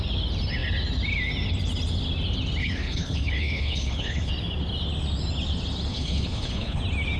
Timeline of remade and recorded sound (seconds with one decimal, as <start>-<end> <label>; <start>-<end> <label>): 0.0-2.6 recorded; 2.6-4.3 remade; 4.3-5.9 recorded; 5.9-6.8 remade; 6.8-7.2 recorded